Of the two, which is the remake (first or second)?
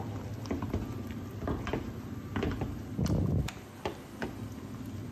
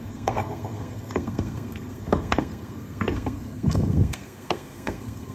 second